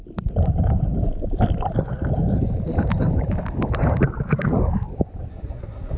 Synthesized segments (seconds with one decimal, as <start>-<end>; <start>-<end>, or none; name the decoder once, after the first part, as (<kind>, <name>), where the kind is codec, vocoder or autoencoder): 5.3-6.0 (codec, SNAC)